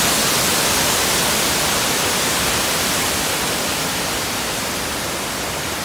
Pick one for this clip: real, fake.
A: real